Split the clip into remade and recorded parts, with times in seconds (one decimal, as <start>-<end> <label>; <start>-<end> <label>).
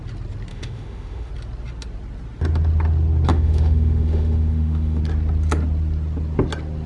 0.0-0.5 recorded; 0.5-1.3 remade; 1.3-3.3 recorded; 3.3-5.0 remade; 5.0-6.9 recorded